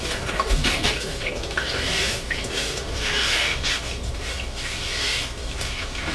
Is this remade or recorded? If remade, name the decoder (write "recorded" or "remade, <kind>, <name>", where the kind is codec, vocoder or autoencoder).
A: remade, codec, DAC